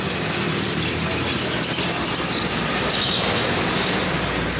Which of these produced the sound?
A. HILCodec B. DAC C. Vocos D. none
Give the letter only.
D